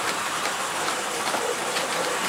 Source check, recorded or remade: remade